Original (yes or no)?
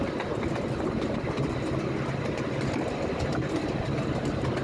yes